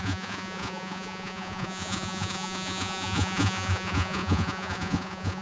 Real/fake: fake